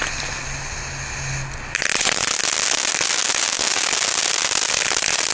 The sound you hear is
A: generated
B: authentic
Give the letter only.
B